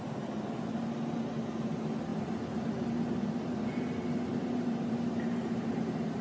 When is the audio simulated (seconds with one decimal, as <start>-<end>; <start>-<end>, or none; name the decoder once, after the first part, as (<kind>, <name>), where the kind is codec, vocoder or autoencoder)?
2.1-2.7 (vocoder, BigVGAN v2); 4.3-6.2